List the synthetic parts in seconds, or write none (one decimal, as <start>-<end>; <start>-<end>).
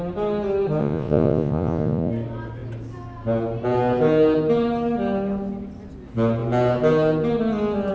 0.8-2.1